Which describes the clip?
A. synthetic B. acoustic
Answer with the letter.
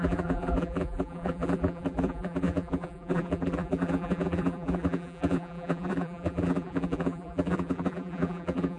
A